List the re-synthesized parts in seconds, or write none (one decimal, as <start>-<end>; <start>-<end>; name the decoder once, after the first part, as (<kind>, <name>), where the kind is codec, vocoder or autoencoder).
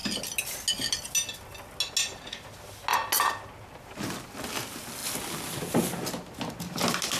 none